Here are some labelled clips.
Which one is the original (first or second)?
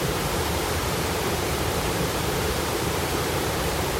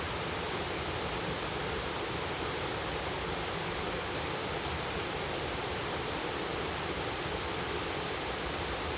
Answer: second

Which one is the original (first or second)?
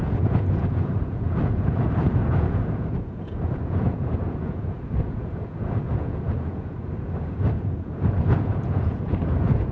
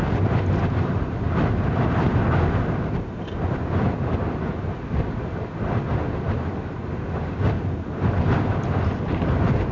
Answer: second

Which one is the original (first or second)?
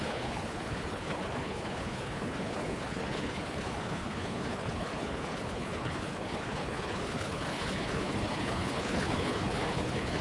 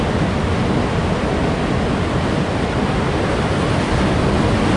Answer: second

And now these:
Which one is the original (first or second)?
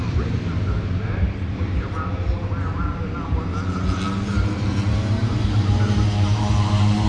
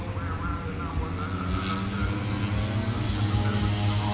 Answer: second